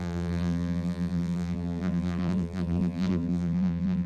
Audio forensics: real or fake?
fake